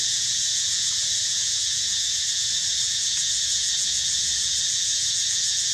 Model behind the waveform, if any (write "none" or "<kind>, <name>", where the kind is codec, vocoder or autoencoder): vocoder, Vocos